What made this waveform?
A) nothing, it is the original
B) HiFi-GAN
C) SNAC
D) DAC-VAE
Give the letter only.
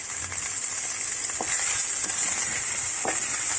A